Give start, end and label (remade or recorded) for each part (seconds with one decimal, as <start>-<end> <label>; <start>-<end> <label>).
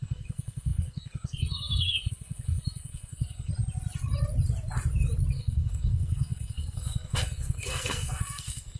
0.0-3.5 remade; 3.5-5.3 recorded; 5.3-8.8 remade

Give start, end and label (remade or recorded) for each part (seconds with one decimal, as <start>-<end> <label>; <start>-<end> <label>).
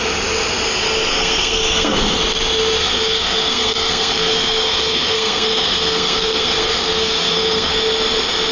0.0-1.1 recorded; 1.1-2.2 remade; 2.2-2.8 recorded; 2.8-7.7 remade; 7.7-8.5 recorded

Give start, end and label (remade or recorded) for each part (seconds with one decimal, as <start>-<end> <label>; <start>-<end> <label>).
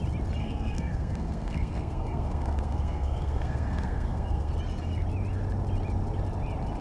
0.0-0.4 recorded; 0.4-4.5 remade; 4.5-6.8 recorded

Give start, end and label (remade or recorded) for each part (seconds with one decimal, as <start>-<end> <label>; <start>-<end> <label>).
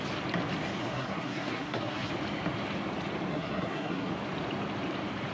0.0-0.8 recorded; 0.8-2.1 remade; 2.1-3.3 recorded; 3.3-4.1 remade; 4.1-5.3 recorded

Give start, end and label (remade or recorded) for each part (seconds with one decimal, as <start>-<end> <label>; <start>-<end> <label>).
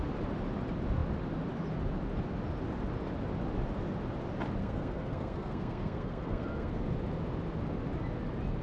0.0-4.6 recorded; 4.6-6.8 remade; 6.8-8.6 recorded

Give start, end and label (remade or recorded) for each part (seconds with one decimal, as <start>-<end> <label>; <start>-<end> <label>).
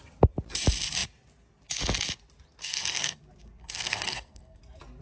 0.0-2.6 recorded; 2.6-3.2 remade; 3.2-3.6 recorded; 3.6-4.6 remade; 4.6-5.0 recorded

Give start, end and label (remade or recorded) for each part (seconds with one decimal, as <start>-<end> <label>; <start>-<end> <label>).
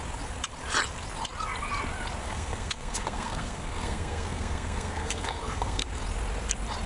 0.0-2.2 recorded; 2.2-5.9 remade; 5.9-6.9 recorded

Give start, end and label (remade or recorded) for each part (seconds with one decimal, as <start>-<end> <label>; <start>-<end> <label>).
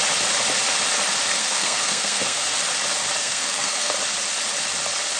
0.0-1.4 recorded; 1.4-2.5 remade; 2.5-3.2 recorded; 3.2-3.9 remade; 3.9-5.2 recorded